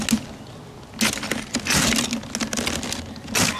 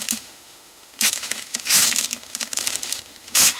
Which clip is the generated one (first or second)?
second